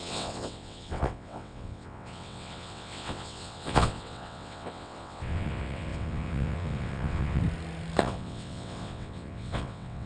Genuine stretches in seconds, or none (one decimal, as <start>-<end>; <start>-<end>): 7.4-8.0